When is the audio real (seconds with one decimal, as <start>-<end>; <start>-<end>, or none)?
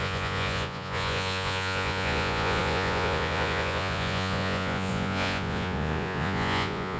none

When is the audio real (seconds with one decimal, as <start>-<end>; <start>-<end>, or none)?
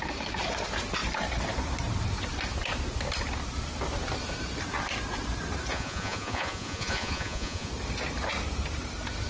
0.0-5.7; 7.7-9.3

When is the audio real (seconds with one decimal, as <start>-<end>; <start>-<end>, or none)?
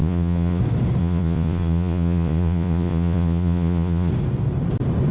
0.6-1.0; 4.1-5.1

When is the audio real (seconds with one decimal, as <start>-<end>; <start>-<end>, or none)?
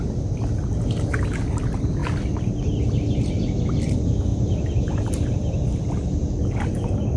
0.0-7.2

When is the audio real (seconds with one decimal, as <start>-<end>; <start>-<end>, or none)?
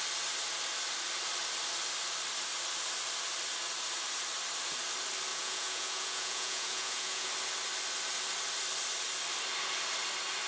0.0-5.3; 7.3-10.5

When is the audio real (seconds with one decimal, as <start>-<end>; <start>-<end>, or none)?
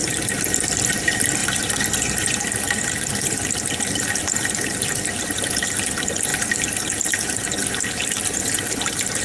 0.0-9.2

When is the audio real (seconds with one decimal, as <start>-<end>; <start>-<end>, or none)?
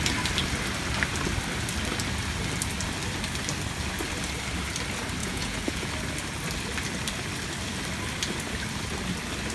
0.0-5.2; 5.9-9.5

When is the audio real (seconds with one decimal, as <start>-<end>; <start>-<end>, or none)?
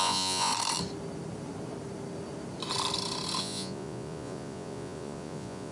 0.5-3.4